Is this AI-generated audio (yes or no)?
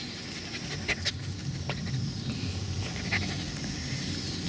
no